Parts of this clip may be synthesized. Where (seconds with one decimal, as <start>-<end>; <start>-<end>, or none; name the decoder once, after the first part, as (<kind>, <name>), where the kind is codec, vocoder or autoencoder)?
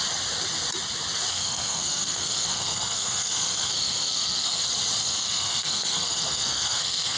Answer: 1.3-4.6 (codec, SNAC); 5.0-7.2